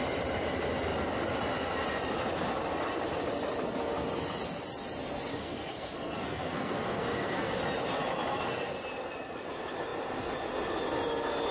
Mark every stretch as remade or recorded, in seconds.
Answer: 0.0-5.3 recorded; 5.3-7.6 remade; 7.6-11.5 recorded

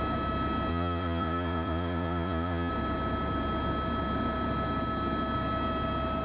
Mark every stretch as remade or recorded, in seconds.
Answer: 0.0-0.7 recorded; 0.7-2.7 remade; 2.7-6.2 recorded

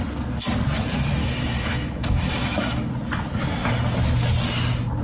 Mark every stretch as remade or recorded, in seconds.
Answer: 0.0-1.2 recorded; 1.2-2.9 remade; 2.9-5.0 recorded

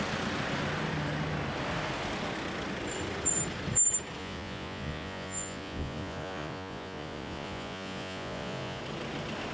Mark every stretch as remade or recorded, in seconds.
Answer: 0.0-4.2 recorded; 4.2-8.8 remade; 8.8-9.5 recorded

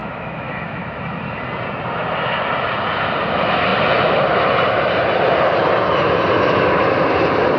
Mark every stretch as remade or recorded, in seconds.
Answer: 0.0-1.0 remade; 1.0-7.6 recorded